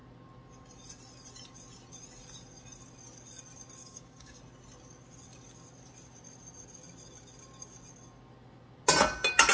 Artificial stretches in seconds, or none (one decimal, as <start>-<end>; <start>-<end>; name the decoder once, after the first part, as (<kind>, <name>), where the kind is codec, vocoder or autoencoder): 3.8-4.4 (codec, DAC)